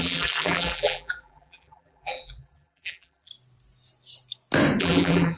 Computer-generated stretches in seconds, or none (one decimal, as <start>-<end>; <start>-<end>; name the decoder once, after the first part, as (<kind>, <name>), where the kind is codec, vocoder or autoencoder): 0.0-3.3 (vocoder, BigVGAN v2); 4.8-5.4